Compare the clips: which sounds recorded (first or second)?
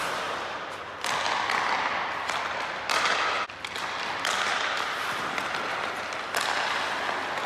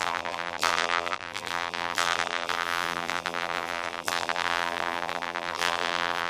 first